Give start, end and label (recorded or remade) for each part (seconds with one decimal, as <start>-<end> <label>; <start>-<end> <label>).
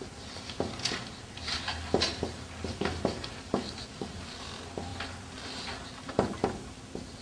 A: 0.0-7.2 recorded